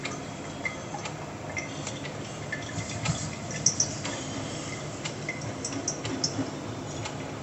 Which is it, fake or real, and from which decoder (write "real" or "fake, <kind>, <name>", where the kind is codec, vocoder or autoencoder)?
real